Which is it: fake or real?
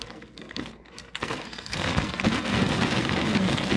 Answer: fake